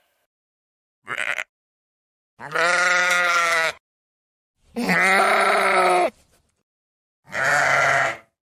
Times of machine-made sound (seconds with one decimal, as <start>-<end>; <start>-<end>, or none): 3.0-3.7